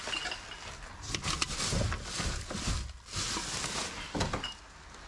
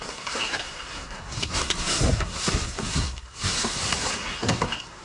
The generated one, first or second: second